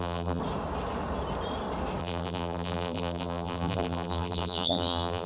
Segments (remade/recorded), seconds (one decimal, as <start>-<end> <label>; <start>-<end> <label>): 0.0-0.4 remade; 0.4-2.0 recorded; 2.0-5.3 remade

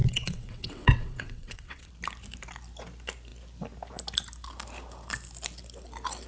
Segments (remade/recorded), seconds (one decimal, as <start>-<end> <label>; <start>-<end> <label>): 0.0-1.9 remade; 1.9-6.3 recorded

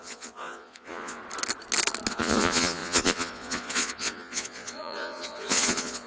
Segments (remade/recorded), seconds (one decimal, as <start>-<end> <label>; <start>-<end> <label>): 0.0-1.2 remade; 1.2-2.1 recorded; 2.1-6.1 remade

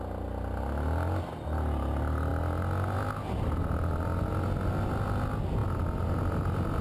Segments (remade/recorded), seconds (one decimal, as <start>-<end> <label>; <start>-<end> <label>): 0.0-6.8 recorded

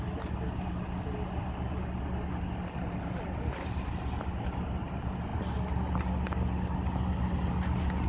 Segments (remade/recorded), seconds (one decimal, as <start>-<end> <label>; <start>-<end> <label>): 0.0-8.1 recorded

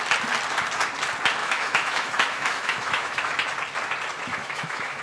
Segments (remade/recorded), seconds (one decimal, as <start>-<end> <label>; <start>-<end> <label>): 0.0-1.4 recorded; 1.4-3.3 remade; 3.3-4.3 recorded; 4.3-5.0 remade

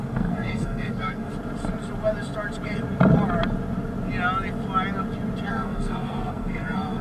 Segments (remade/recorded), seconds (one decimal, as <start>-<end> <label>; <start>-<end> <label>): 0.0-1.3 remade; 1.3-5.5 recorded; 5.5-7.0 remade